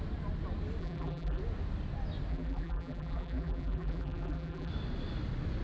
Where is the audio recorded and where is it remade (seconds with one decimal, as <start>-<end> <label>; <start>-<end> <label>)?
0.0-0.8 recorded; 0.8-1.4 remade; 1.4-2.3 recorded; 2.3-4.7 remade; 4.7-5.6 recorded